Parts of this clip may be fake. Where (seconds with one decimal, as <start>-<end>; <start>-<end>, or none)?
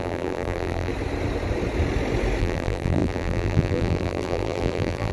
0.0-0.9; 2.4-5.1